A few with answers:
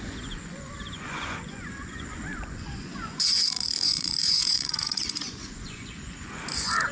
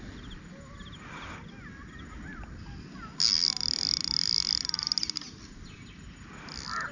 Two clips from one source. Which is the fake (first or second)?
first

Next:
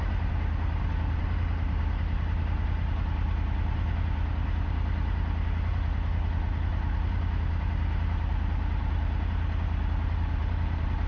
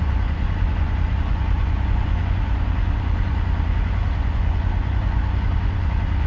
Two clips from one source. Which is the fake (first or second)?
second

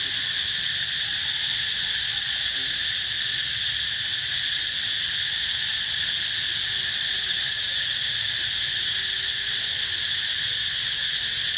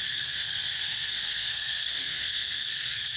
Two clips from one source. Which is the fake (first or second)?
second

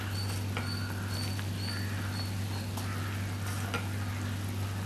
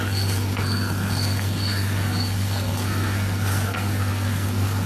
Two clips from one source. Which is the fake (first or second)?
second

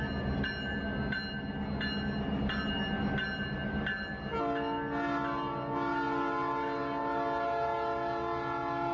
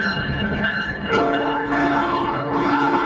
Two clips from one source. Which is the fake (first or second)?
second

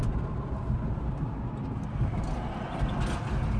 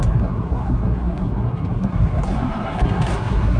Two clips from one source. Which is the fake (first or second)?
second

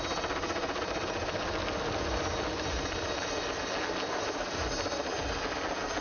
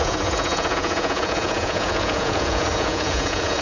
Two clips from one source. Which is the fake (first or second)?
second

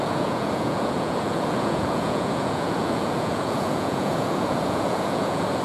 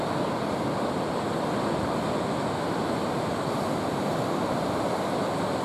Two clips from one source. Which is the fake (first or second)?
first